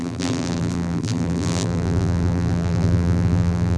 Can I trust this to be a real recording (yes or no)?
no